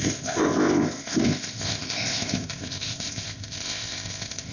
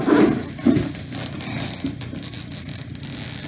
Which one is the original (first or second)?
second